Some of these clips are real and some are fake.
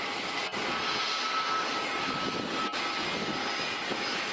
real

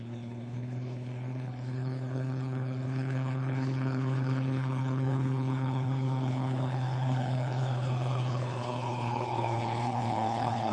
fake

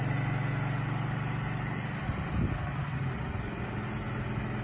real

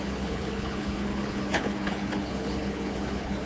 fake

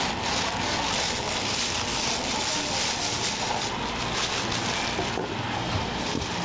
real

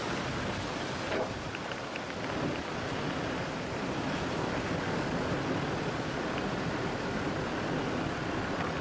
real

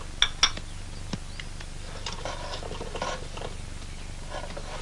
real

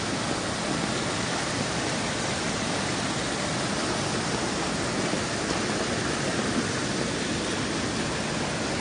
real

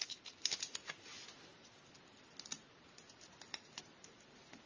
real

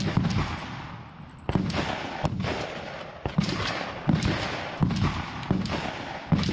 real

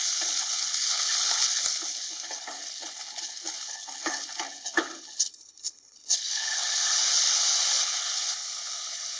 fake